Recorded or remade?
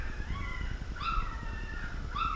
recorded